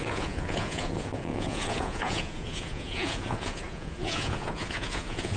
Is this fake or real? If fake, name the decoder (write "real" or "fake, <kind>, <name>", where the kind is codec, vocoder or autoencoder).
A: fake, vocoder, Vocos